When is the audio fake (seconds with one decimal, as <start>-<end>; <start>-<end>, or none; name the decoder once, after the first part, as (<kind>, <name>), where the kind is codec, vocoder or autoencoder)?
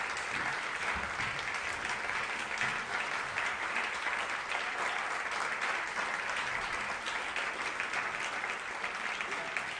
0.5-1.2 (vocoder, BigVGAN v2); 2.7-3.9